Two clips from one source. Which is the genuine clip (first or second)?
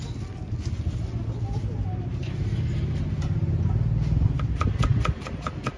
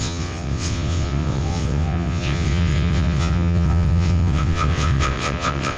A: first